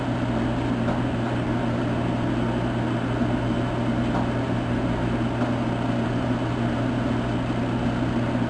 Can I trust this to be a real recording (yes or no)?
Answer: yes